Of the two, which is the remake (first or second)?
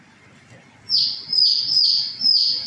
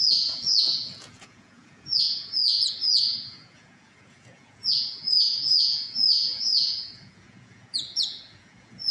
second